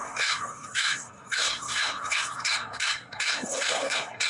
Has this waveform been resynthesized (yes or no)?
yes